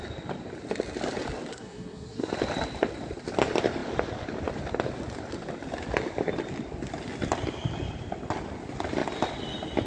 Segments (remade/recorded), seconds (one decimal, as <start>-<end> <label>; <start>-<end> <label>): 0.0-1.5 recorded; 1.5-2.3 remade; 2.3-9.9 recorded